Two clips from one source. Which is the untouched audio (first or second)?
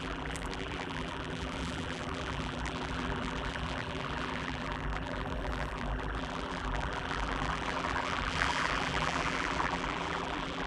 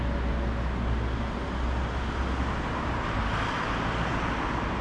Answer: second